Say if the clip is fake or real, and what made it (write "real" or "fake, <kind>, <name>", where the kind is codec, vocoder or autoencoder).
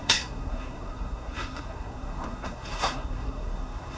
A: fake, codec, SNAC